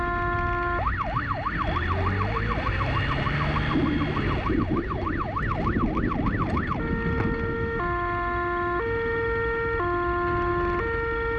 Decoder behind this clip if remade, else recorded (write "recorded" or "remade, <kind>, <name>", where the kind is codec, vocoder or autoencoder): recorded